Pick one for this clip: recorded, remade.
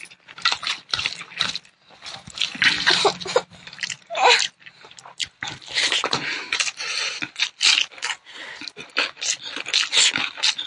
recorded